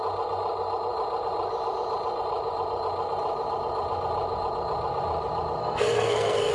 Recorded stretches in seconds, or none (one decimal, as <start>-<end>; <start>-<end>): 0.0-5.6